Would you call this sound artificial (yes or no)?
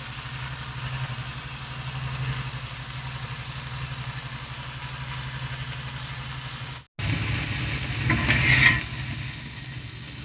no